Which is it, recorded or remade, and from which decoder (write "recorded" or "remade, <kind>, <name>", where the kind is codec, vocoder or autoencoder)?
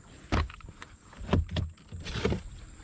recorded